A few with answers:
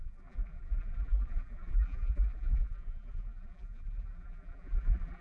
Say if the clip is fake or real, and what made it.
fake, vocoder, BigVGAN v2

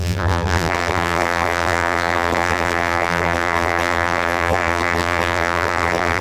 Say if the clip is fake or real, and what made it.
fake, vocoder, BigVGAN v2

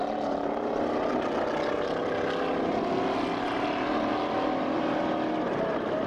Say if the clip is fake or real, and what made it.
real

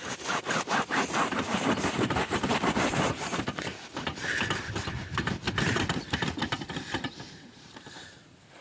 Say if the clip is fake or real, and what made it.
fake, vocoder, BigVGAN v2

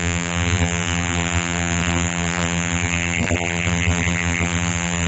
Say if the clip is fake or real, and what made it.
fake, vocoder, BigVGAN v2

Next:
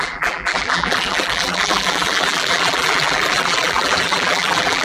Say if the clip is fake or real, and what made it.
fake, vocoder, BigVGAN v2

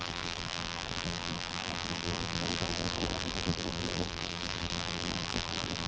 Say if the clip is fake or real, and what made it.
fake, vocoder, BigVGAN v2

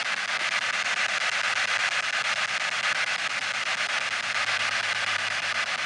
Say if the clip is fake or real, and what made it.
real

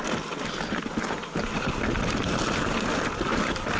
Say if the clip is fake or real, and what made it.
real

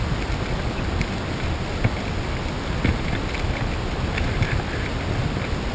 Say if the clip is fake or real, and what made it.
real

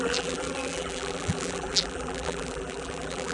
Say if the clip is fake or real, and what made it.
fake, vocoder, BigVGAN v2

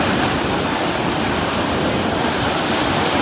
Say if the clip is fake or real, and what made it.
real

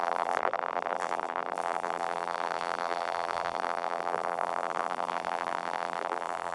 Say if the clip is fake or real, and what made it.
fake, vocoder, BigVGAN v2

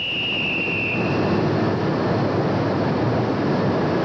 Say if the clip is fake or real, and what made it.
real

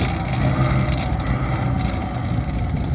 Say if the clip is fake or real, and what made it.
real